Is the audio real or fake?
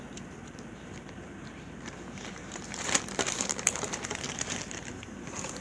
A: fake